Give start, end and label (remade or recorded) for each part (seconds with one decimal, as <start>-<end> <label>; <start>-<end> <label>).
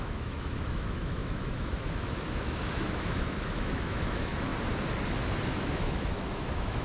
0.0-4.5 remade; 4.5-5.4 recorded; 5.4-6.8 remade